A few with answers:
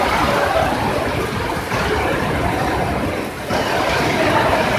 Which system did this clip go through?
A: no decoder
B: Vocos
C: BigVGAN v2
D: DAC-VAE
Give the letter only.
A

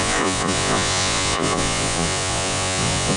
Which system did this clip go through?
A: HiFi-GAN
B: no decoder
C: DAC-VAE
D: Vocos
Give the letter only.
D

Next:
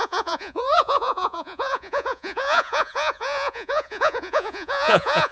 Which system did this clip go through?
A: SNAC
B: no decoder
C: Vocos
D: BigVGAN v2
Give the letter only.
C